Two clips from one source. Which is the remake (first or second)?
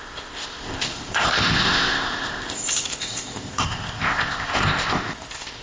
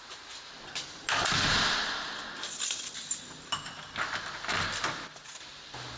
first